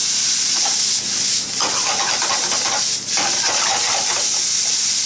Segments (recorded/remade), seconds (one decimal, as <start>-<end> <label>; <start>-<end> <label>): 0.0-5.1 recorded